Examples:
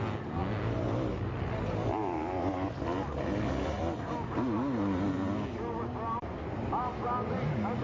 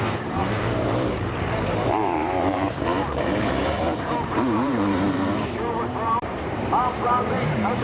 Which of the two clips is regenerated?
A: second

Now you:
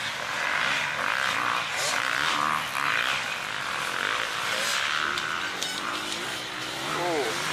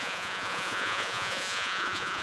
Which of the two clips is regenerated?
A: second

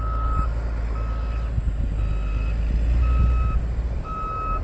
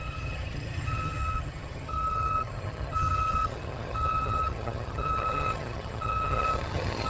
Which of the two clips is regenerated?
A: second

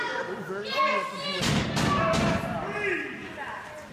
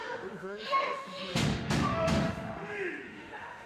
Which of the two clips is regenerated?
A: second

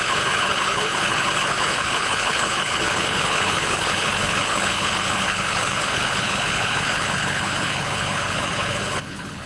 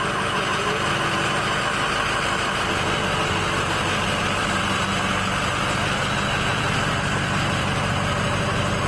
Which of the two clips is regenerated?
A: first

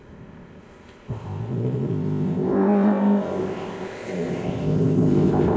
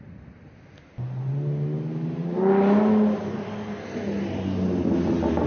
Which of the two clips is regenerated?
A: first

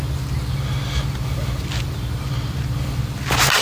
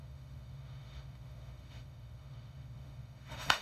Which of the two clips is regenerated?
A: second